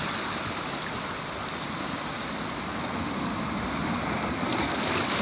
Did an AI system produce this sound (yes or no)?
no